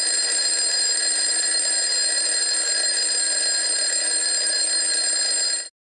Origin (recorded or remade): recorded